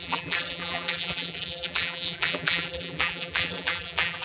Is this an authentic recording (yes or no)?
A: no